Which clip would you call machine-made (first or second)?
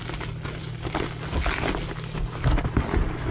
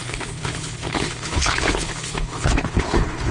second